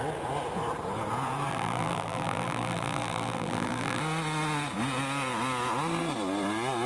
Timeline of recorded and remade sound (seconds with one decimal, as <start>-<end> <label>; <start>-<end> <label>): 0.0-1.5 recorded; 1.5-4.0 remade; 4.0-6.9 recorded

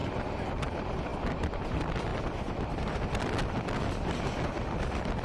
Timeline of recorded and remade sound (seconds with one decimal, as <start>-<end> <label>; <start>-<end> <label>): 0.0-0.6 remade; 0.6-1.1 recorded; 1.1-1.6 remade; 1.6-2.1 recorded; 2.1-4.3 remade; 4.3-5.2 recorded

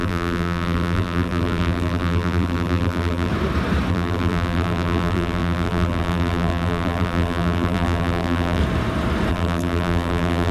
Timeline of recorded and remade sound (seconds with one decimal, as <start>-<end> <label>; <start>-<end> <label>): 0.0-3.3 remade; 3.3-3.9 recorded; 3.9-8.6 remade; 8.6-9.3 recorded; 9.3-10.5 remade

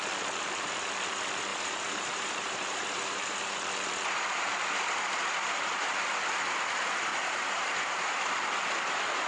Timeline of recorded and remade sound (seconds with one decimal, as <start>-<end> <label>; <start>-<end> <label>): 0.0-1.5 recorded; 1.5-3.4 remade; 3.4-5.4 recorded; 5.4-5.9 remade; 5.9-7.1 recorded; 7.1-8.2 remade; 8.2-9.3 recorded

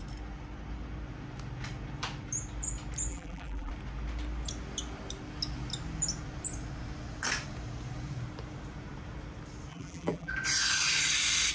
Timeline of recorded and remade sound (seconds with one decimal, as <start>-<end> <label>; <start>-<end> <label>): 0.0-3.1 recorded; 3.1-3.7 remade; 3.7-9.7 recorded; 9.7-10.3 remade; 10.3-11.5 recorded

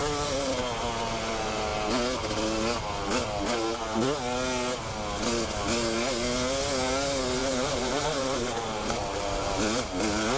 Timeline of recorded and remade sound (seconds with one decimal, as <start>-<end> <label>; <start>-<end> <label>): 0.0-7.4 recorded; 7.4-9.6 remade; 9.6-10.4 recorded